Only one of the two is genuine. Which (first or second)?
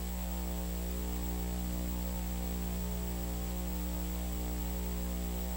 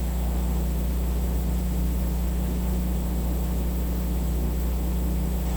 first